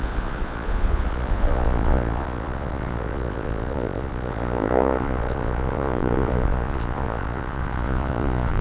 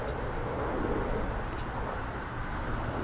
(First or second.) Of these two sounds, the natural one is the second